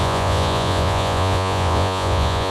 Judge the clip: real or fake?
fake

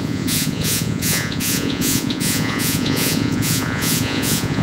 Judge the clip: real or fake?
fake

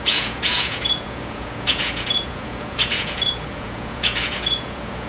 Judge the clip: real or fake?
fake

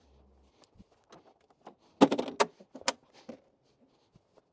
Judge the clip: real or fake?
real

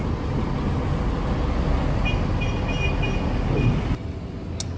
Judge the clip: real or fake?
real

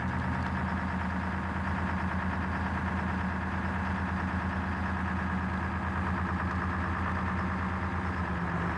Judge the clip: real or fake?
real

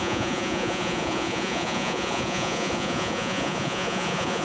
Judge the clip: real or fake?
fake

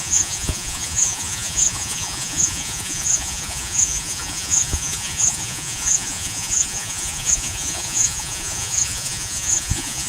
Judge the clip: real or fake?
fake